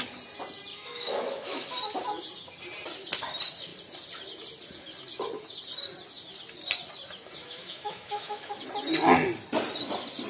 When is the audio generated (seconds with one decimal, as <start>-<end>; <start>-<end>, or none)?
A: 0.7-1.7; 7.4-8.6

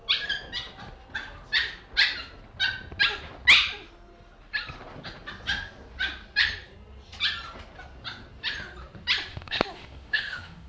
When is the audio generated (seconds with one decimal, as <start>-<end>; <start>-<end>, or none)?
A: 9.3-10.7

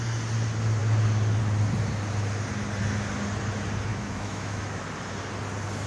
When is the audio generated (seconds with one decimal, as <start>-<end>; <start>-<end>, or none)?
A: 3.9-4.8

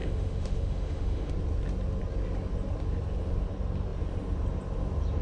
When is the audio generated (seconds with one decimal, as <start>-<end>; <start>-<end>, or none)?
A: 0.0-1.3